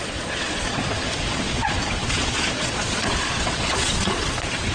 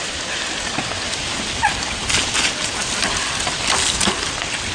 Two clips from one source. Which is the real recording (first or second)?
second